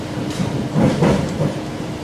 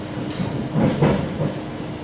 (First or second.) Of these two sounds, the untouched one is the second